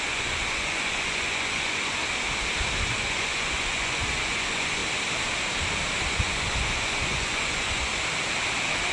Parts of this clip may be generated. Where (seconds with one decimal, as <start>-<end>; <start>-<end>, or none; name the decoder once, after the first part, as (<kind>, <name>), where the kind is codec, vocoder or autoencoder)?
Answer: 0.0-2.0 (vocoder, Vocos); 2.8-4.8; 6.1-7.9